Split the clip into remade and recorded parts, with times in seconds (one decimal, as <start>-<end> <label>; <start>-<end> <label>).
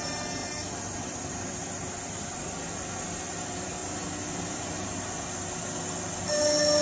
0.0-6.8 recorded